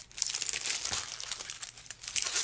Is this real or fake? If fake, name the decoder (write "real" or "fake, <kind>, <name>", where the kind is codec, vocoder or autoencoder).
real